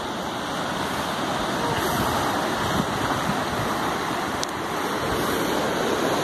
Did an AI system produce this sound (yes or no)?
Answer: no